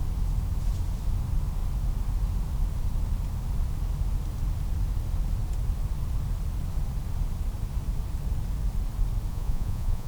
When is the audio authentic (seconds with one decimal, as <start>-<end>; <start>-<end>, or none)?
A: 0.0-9.3